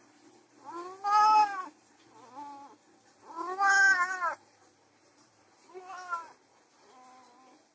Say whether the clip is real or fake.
real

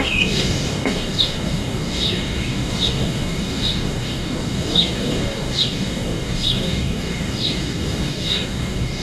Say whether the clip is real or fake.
fake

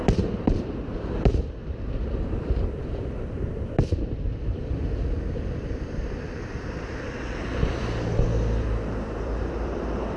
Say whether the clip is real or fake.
fake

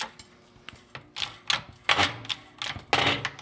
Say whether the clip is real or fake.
real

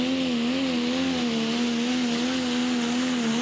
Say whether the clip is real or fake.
real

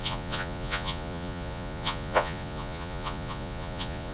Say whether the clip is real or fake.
fake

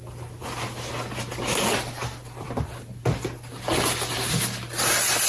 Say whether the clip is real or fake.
real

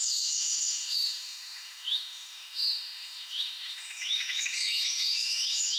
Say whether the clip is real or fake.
fake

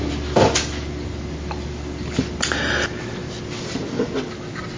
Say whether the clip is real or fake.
real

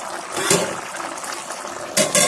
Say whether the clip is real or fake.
real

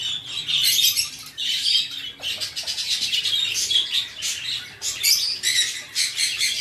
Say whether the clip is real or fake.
real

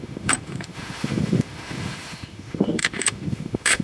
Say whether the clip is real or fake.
fake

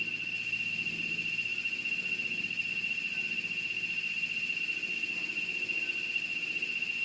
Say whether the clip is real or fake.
real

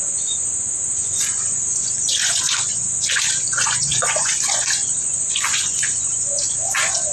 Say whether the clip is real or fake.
fake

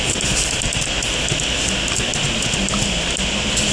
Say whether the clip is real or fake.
real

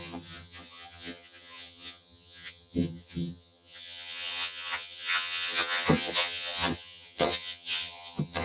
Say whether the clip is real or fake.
fake